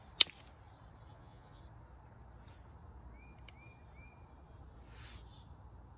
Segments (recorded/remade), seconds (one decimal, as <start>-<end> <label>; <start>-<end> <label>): 0.0-1.1 recorded; 1.1-1.6 remade; 1.6-6.0 recorded

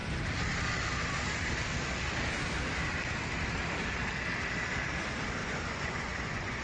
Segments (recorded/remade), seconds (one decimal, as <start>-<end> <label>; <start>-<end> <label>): 0.0-5.4 recorded; 5.4-6.6 remade

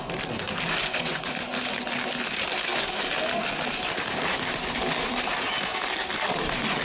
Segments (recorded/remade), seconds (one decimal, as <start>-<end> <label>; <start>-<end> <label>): 0.0-0.8 recorded; 0.8-1.5 remade; 1.5-6.8 recorded